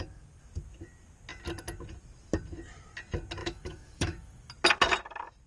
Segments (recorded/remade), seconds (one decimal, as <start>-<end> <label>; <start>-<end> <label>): 0.0-3.4 recorded; 3.4-4.5 remade; 4.5-5.5 recorded

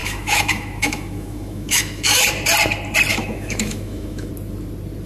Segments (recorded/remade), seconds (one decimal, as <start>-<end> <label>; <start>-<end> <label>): 0.0-2.2 remade; 2.2-3.1 recorded; 3.1-4.3 remade; 4.3-5.1 recorded

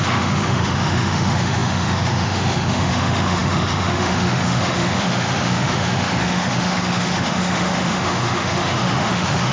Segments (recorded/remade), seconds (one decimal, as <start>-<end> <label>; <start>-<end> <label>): 0.0-9.5 remade

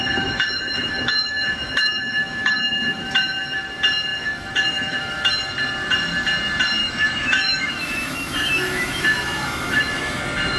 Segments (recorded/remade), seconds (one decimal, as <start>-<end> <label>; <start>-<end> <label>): 0.0-3.6 remade; 3.6-4.1 recorded; 4.1-5.3 remade; 5.3-6.8 recorded; 6.8-10.2 remade; 10.2-10.6 recorded

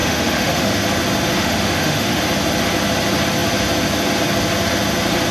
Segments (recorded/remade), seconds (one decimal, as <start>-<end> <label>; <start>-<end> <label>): 0.0-0.8 remade; 0.8-1.4 recorded; 1.4-2.2 remade; 2.2-5.3 recorded

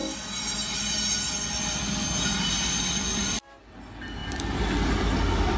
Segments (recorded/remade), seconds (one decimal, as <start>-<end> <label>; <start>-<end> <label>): 0.0-5.6 recorded

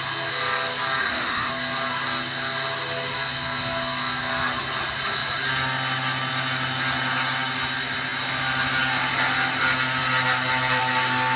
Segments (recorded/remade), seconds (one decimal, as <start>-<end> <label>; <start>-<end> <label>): 0.0-1.0 recorded; 1.0-1.5 remade; 1.5-11.4 recorded

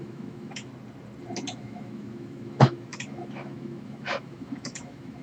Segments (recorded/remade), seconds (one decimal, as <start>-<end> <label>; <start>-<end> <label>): 0.0-0.7 remade; 0.7-1.5 recorded; 1.5-5.2 remade